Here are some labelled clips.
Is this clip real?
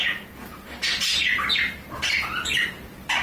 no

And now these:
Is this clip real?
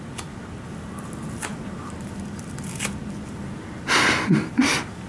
yes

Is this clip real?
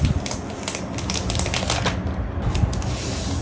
yes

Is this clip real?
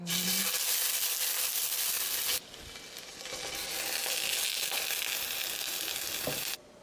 yes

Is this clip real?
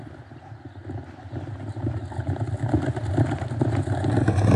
yes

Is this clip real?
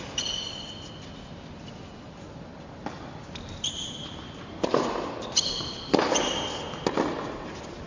yes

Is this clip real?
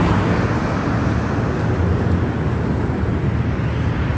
yes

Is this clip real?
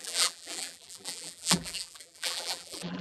no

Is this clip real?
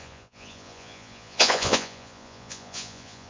no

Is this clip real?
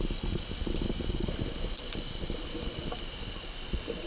yes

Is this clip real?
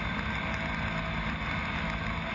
yes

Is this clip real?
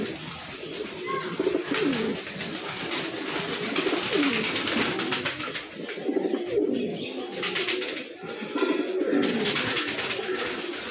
yes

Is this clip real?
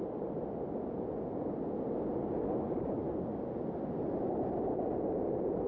yes